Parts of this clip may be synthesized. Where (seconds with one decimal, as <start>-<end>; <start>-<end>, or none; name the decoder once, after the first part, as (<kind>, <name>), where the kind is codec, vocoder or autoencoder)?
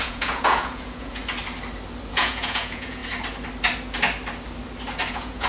0.0-1.2 (vocoder, Vocos); 2.1-3.0; 5.1-5.5